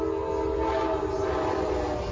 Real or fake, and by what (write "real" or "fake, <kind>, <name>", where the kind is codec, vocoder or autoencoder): real